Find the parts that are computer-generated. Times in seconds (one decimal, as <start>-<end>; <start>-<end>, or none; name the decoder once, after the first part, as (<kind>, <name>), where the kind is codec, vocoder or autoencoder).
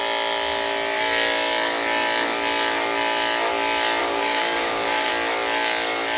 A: 4.0-5.1 (codec, DAC)